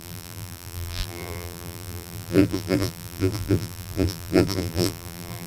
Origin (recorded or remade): remade